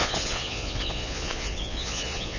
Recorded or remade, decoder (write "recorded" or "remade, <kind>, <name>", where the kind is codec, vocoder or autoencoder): remade, vocoder, Vocos